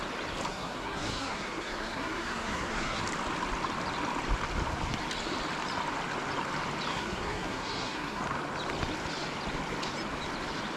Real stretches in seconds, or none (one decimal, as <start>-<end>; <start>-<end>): 0.0-0.5; 3.0-6.9; 8.2-10.8